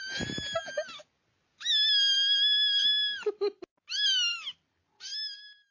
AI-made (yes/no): no